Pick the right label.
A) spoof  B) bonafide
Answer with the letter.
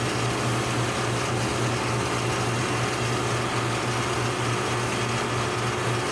B